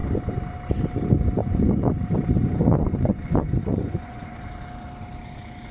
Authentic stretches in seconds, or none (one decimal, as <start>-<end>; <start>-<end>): 0.0-1.4; 1.9-2.4; 4.4-5.7